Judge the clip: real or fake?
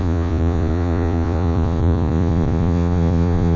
fake